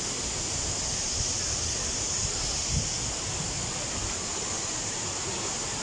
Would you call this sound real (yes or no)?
yes